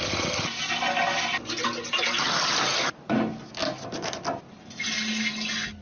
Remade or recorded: recorded